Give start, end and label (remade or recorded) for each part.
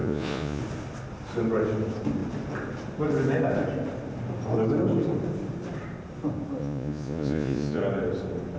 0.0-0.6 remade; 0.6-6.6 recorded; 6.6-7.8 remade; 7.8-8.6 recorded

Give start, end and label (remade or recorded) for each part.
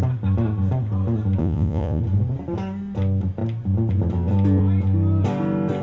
0.0-1.4 recorded; 1.4-2.0 remade; 2.0-5.8 recorded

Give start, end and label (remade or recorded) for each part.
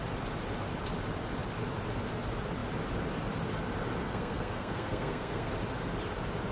0.0-4.0 recorded; 4.0-5.5 remade; 5.5-6.5 recorded